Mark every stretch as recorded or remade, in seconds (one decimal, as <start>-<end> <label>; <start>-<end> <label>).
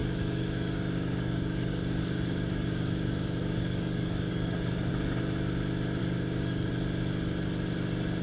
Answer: 0.0-4.9 remade; 4.9-6.0 recorded; 6.0-6.7 remade; 6.7-8.2 recorded